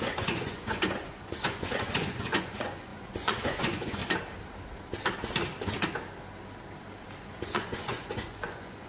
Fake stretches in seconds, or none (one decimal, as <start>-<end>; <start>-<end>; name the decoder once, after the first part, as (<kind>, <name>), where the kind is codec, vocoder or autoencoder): 0.0-4.0 (vocoder, Vocos); 7.2-8.9